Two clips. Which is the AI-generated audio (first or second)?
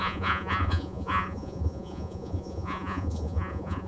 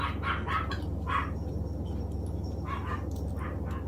first